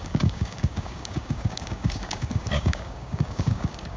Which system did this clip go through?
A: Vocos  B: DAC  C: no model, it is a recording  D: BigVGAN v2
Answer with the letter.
B